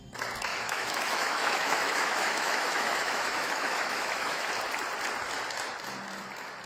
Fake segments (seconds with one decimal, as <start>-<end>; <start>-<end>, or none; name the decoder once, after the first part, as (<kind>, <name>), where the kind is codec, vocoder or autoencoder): 0.5-4.5 (autoencoder, DAC-VAE)